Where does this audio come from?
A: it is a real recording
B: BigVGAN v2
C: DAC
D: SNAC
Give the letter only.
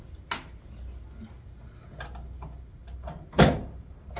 A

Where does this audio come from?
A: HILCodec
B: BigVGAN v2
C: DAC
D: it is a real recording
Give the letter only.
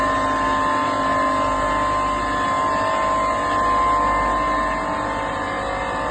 D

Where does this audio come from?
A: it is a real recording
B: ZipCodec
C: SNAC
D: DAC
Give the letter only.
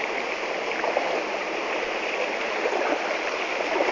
A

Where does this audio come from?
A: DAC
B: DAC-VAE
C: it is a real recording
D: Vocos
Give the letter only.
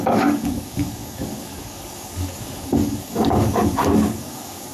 A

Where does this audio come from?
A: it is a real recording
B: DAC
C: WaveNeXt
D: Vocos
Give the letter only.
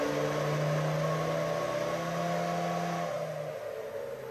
A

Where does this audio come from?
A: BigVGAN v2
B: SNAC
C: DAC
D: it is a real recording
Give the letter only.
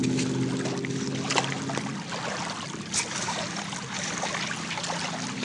D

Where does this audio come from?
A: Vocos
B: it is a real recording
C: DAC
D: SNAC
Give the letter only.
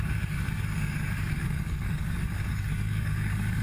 C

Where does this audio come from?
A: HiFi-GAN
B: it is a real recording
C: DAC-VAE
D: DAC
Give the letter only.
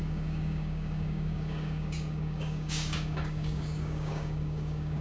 D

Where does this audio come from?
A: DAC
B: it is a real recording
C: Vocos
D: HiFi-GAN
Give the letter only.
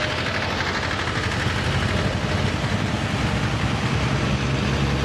B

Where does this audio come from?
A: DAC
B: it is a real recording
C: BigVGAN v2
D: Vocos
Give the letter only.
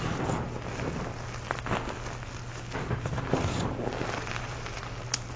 B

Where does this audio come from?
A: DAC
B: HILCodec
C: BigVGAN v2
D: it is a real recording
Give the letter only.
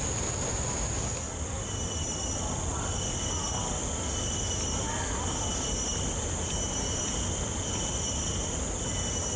D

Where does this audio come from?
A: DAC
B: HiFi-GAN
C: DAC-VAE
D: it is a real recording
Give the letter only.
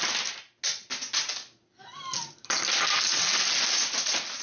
D